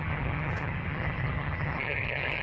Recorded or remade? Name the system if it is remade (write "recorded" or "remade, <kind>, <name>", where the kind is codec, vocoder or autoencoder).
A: remade, vocoder, HiFi-GAN